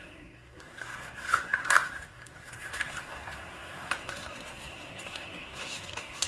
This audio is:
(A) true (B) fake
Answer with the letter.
B